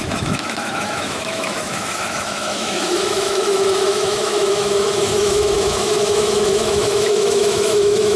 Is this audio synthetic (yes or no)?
yes